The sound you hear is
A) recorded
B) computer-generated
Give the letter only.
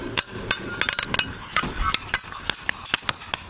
A